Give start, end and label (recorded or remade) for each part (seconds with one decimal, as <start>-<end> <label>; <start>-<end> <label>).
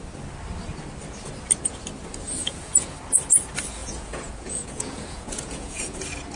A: 0.0-2.4 recorded; 2.4-2.9 remade; 2.9-3.8 recorded; 3.8-6.0 remade; 6.0-6.4 recorded